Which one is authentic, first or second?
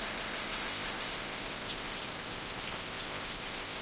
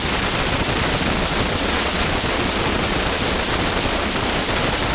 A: second